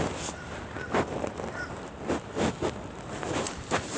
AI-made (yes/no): yes